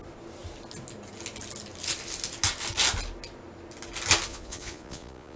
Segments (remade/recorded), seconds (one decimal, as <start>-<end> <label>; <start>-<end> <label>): 0.0-4.3 recorded; 4.3-5.4 remade